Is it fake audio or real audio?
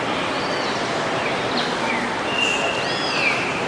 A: real